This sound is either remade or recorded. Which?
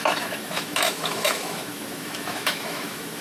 remade